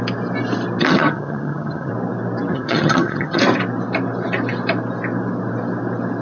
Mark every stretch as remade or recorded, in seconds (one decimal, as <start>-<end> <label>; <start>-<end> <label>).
0.0-0.8 recorded; 0.8-1.9 remade; 1.9-2.5 recorded; 2.5-3.4 remade; 3.4-6.2 recorded